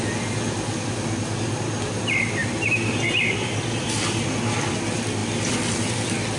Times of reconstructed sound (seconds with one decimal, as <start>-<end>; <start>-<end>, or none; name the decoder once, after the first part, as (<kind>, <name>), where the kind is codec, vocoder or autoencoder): 2.4-4.7 (vocoder, BigVGAN v2); 5.2-5.9